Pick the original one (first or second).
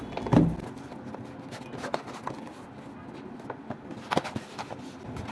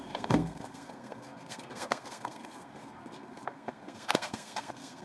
first